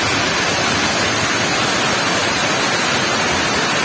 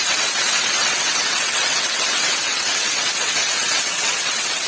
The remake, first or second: second